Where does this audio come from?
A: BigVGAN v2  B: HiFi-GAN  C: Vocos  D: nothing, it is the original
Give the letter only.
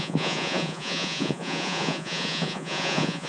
C